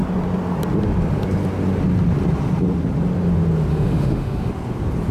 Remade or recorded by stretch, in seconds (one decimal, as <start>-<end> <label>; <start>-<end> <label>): 0.0-3.7 recorded; 3.7-4.5 remade; 4.5-5.1 recorded

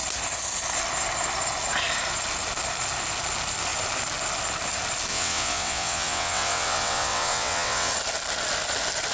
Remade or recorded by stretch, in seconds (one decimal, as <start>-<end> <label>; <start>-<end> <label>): 0.0-5.1 recorded; 5.1-7.9 remade; 7.9-9.1 recorded

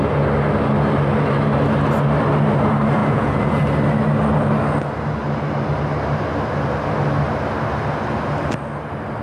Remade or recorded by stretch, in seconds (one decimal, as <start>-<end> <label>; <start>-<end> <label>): 0.0-3.0 recorded; 3.0-3.6 remade; 3.6-9.2 recorded